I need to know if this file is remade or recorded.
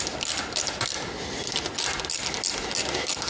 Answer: recorded